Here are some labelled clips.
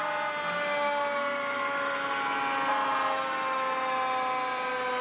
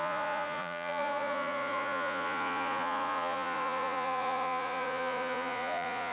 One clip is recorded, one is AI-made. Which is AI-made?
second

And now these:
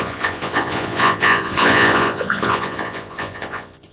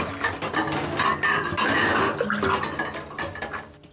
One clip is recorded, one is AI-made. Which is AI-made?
first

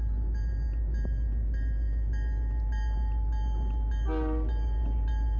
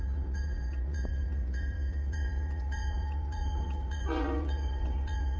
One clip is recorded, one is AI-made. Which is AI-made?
second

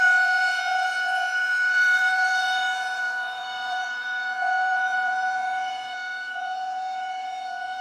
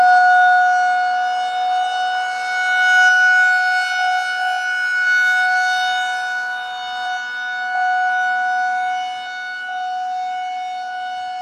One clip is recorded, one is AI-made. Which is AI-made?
first